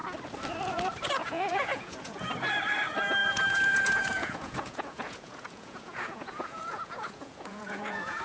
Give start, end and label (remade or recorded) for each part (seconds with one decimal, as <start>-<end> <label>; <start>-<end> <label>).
0.0-1.2 recorded; 1.2-2.3 remade; 2.3-3.2 recorded; 3.2-8.2 remade